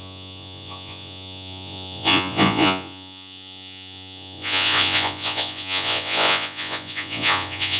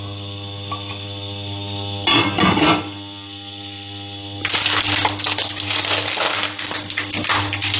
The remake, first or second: first